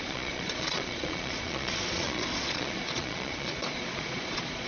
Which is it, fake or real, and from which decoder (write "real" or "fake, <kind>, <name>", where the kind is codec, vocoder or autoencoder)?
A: fake, vocoder, Vocos